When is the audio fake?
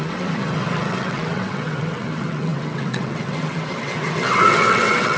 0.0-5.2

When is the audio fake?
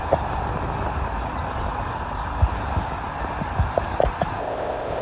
4.4-5.0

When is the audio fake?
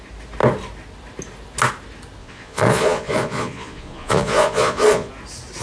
2.2-5.1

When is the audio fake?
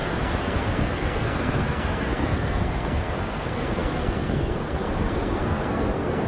0.0-6.3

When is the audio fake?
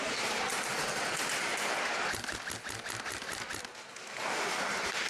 0.0-1.1; 4.2-5.1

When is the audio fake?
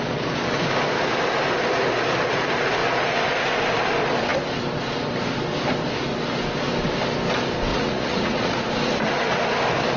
7.7-8.7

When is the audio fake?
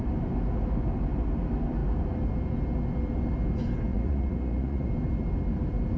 3.9-4.9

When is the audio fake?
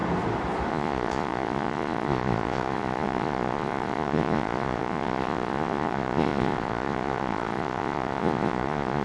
0.7-9.0